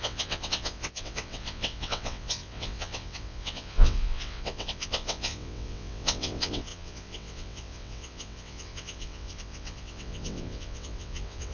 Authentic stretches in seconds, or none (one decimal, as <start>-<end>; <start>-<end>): none